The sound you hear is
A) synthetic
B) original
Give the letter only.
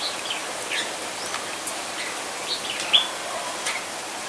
B